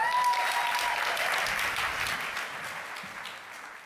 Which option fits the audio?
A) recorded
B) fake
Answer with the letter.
A